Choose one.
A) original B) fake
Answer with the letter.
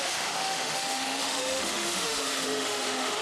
B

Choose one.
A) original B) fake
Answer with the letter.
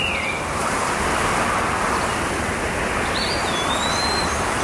A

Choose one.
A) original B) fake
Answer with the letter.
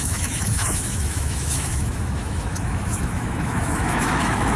B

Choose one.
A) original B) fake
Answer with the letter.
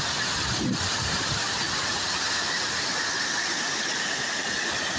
A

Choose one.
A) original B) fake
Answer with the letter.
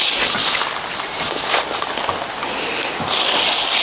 A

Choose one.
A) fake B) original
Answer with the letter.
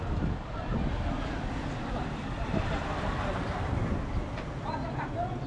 B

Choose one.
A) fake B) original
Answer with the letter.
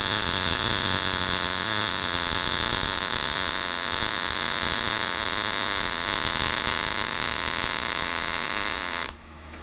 A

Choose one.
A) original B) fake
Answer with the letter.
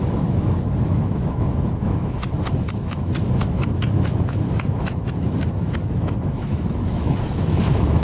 B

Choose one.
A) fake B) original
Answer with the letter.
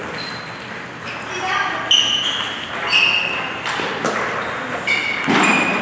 B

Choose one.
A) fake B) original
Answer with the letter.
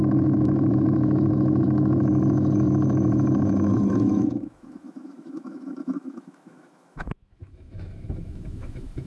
A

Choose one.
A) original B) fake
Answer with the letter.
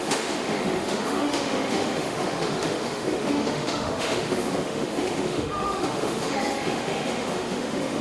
B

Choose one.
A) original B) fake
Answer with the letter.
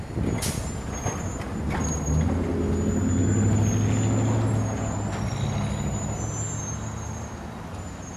A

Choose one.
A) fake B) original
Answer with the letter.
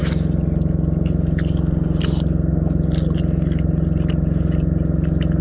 B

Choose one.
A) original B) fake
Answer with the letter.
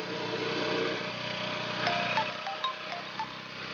A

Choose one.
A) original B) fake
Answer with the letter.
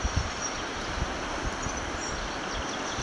A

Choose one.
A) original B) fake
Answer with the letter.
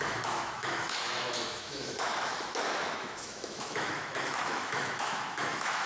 B